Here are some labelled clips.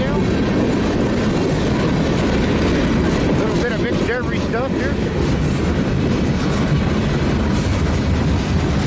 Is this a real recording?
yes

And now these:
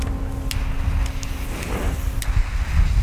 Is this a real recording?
yes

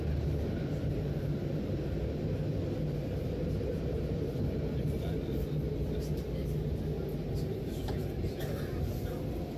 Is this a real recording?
yes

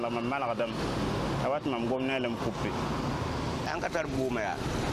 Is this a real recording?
yes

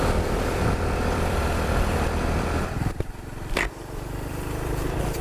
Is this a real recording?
no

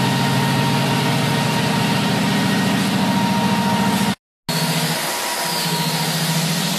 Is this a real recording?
yes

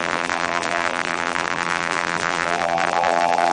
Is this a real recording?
no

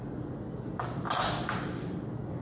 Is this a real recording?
yes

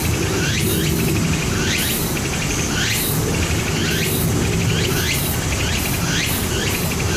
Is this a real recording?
yes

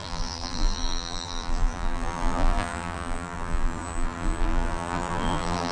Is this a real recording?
no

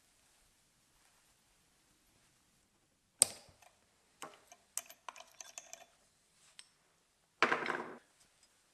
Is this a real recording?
yes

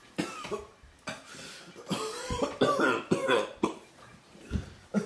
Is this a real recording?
no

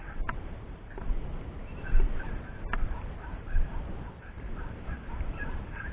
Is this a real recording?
no